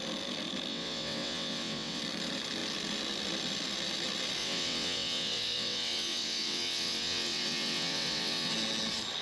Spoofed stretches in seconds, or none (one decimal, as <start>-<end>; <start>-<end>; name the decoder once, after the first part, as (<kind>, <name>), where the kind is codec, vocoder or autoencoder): 0.7-2.0 (vocoder, WaveNeXt); 4.4-8.5